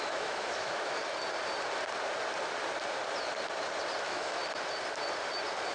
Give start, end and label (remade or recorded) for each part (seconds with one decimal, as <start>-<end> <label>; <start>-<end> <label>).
0.0-1.0 remade; 1.0-4.0 recorded; 4.0-4.4 remade; 4.4-5.7 recorded